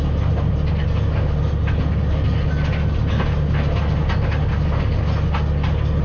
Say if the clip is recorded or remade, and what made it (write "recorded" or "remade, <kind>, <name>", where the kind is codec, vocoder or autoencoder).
recorded